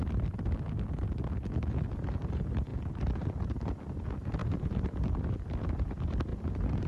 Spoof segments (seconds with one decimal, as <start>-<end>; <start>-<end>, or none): 2.7-3.7; 4.4-5.1; 6.3-6.9